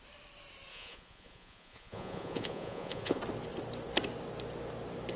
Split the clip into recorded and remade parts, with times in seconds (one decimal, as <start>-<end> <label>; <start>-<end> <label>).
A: 0.0-0.7 recorded; 0.7-3.2 remade; 3.2-5.2 recorded